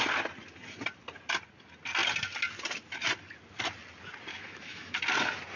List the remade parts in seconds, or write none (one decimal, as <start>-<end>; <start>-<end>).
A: 4.3-5.0